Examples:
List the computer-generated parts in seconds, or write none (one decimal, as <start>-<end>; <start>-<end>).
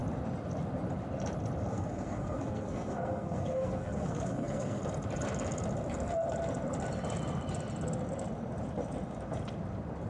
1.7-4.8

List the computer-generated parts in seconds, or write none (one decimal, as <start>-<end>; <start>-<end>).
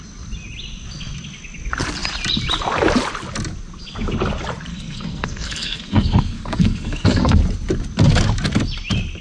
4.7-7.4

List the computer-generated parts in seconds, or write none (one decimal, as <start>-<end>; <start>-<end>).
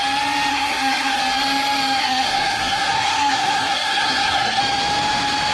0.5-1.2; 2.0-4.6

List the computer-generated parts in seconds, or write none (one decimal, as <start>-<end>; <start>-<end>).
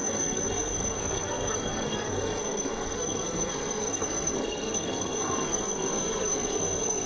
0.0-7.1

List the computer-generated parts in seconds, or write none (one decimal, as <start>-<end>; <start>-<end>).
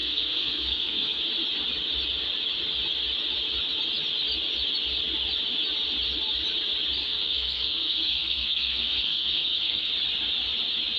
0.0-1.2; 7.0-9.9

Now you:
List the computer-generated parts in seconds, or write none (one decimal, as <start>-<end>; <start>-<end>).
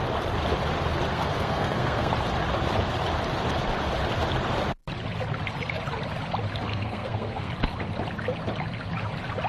1.1-2.1; 6.7-7.5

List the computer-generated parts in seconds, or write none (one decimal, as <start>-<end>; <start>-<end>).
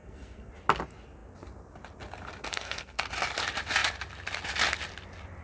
0.0-0.5; 2.5-3.0